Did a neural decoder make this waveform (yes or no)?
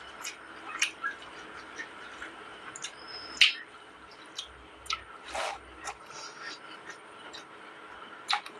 yes